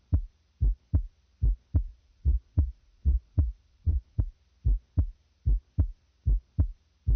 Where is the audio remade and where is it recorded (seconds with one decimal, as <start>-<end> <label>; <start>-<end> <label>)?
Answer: 0.0-1.9 recorded; 1.9-4.2 remade; 4.2-7.2 recorded